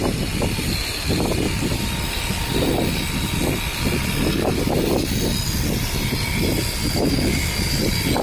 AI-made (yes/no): no